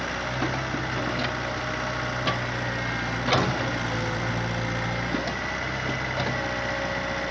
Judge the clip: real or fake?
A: real